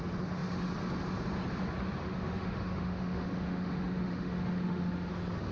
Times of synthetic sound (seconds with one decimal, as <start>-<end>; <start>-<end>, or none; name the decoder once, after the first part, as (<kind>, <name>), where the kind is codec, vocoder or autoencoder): 2.0-5.1 (autoencoder, DAC-VAE)